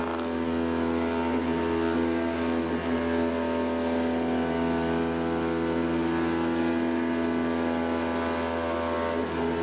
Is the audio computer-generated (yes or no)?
no